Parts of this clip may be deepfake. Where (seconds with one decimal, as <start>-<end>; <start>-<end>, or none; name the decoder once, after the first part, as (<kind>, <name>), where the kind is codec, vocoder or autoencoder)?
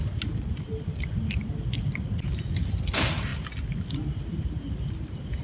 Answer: none